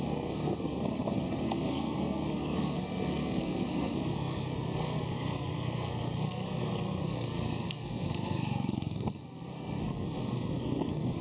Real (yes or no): no